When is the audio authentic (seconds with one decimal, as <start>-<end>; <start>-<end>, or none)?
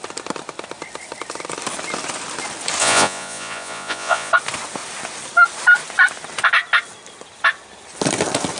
0.0-2.8; 4.3-8.6